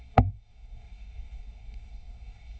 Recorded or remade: remade